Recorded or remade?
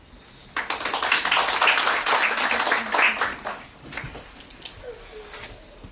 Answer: recorded